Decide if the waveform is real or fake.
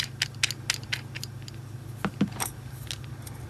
real